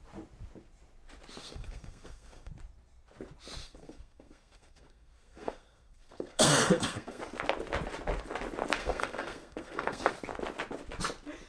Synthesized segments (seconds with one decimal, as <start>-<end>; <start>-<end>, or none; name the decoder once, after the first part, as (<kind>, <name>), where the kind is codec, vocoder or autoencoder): 1.4-2.5 (codec, SNAC); 3.6-7.2; 8.8-10.1